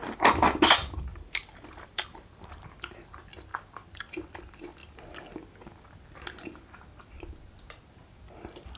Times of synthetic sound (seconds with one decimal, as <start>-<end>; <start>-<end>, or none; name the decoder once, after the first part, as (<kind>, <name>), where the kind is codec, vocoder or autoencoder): 1.1-2.6 (vocoder, BigVGAN v2)